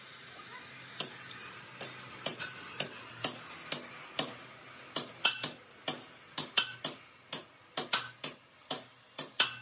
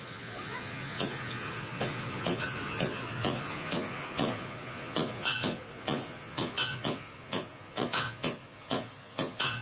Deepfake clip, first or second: second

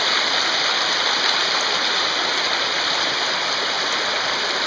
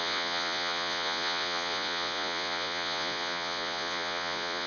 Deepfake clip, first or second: second